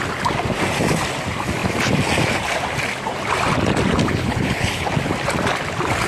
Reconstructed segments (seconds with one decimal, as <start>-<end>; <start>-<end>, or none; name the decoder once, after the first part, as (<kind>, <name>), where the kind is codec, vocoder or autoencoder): 3.9-4.9 (codec, HILCodec)